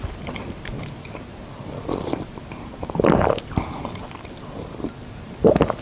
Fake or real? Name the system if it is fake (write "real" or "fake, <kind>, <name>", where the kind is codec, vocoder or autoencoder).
real